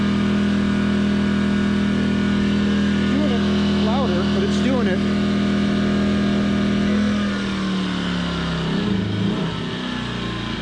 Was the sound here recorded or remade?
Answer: recorded